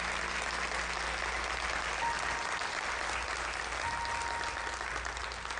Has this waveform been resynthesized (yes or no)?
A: no